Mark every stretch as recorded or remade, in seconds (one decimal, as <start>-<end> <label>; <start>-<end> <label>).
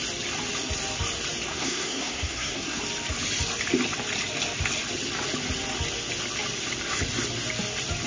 0.0-1.5 recorded; 1.5-2.8 remade; 2.8-8.1 recorded